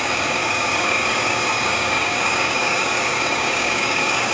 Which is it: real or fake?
fake